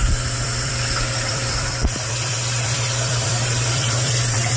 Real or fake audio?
fake